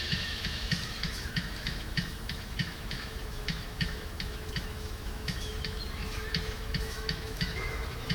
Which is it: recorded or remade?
remade